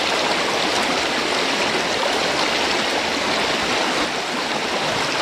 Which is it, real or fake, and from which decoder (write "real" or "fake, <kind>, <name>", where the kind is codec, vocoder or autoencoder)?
real